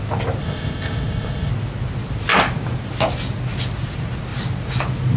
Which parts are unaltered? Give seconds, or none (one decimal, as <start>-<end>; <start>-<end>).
0.0-0.4; 1.5-5.2